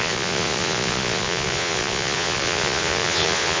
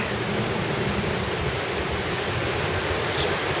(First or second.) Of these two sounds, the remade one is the first